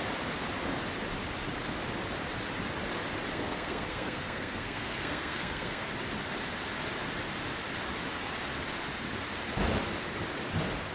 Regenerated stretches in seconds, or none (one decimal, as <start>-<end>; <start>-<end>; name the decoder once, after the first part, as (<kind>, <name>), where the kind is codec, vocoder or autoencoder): 3.3-5.8 (codec, SNAC)